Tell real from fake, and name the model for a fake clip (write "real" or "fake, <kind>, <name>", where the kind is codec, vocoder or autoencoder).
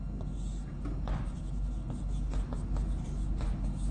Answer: real